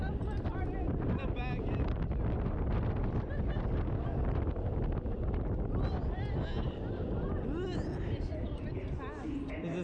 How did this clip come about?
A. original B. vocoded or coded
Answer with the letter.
A